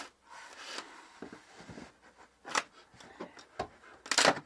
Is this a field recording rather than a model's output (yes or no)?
yes